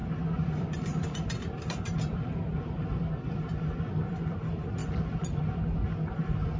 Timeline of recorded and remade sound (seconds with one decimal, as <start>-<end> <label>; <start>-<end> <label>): 0.0-2.4 remade; 2.4-4.8 recorded; 4.8-5.4 remade; 5.4-6.6 recorded